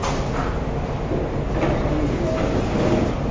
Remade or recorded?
recorded